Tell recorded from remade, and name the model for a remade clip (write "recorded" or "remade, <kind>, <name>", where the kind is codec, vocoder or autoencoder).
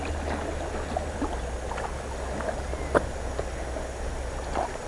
recorded